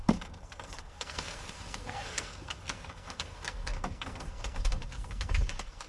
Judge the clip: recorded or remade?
remade